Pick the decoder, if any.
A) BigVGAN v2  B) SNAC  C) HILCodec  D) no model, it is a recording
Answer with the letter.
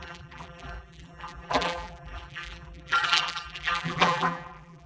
A